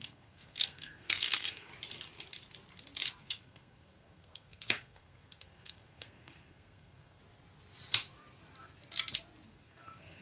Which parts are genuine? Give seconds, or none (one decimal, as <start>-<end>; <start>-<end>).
1.7-3.2; 7.2-9.5